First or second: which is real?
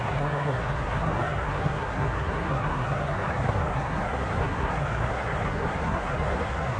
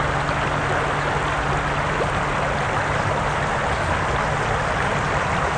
second